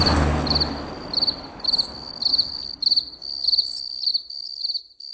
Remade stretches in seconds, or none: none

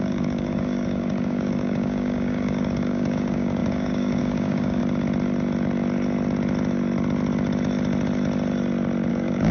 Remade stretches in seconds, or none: 0.0-4.8 (codec, DAC); 9.1-9.5

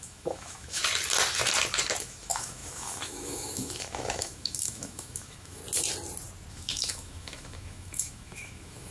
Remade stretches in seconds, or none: 0.0-0.8 (autoencoder, DAC-VAE); 2.0-5.6; 6.5-8.9